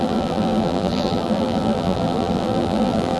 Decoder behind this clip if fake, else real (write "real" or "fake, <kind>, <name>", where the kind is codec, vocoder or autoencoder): fake, vocoder, BigVGAN v2